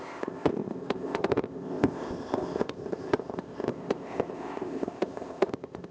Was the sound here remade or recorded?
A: remade